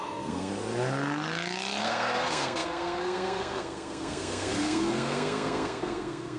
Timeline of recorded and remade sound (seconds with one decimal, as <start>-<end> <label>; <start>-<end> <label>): 0.0-0.5 remade; 0.5-1.8 recorded; 1.8-6.4 remade